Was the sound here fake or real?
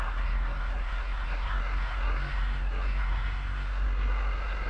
fake